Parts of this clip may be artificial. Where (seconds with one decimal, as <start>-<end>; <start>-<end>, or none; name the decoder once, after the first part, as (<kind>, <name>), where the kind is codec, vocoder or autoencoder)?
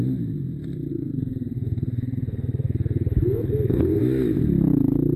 0.9-4.0 (codec, SNAC)